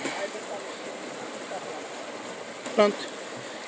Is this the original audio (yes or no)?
yes